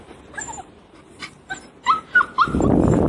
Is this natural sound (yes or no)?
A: yes